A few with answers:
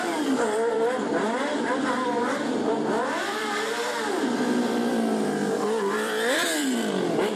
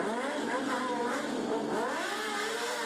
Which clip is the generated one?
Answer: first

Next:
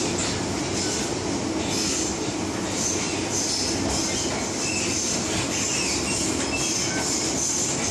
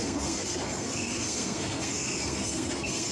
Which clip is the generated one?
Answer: second